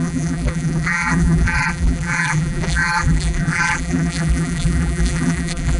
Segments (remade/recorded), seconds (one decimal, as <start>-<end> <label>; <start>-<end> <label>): 0.0-5.8 remade

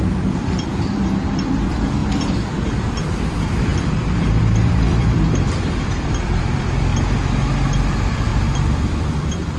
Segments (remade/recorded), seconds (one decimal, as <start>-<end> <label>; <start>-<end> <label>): 0.0-2.0 remade; 2.0-2.9 recorded; 2.9-6.9 remade; 6.9-7.7 recorded; 7.7-9.6 remade